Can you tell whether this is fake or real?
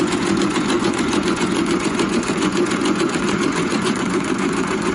fake